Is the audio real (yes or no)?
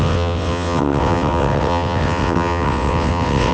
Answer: no